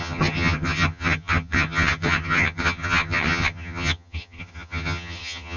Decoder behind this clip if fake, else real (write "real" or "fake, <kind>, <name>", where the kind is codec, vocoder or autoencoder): fake, vocoder, HiFi-GAN